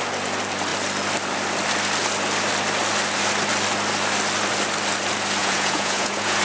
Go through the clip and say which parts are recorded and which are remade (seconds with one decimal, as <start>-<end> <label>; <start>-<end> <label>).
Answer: 0.0-5.4 recorded; 5.4-6.4 remade